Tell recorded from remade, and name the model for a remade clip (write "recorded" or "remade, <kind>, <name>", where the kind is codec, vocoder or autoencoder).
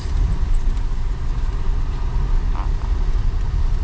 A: recorded